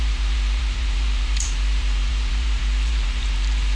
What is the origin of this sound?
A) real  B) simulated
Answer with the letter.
B